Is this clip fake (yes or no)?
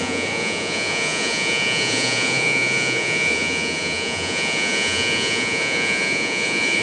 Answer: yes